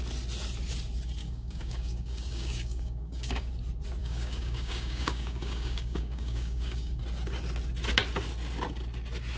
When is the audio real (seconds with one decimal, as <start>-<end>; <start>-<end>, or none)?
0.0-1.2; 3.5-4.0; 7.0-9.4